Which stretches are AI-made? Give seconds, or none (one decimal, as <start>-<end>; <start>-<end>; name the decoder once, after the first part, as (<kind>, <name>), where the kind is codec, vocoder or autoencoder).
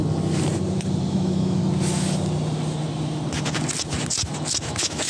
1.1-1.6 (autoencoder, DAC-VAE); 4.6-5.1